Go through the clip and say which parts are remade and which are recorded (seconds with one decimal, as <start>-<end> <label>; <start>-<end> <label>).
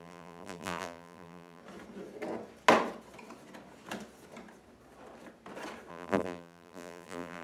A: 0.0-1.6 remade; 1.6-5.9 recorded; 5.9-7.4 remade